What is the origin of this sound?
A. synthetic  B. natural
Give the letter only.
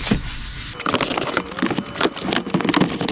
B